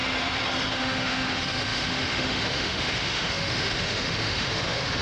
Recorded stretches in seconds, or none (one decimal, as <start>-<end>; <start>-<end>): 0.0-0.7